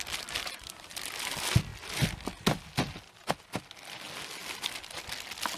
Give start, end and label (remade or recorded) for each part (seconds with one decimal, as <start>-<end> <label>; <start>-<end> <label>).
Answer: 0.0-5.6 recorded